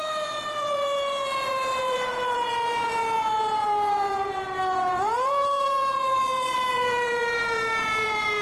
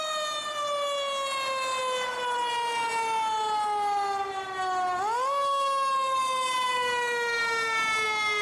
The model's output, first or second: first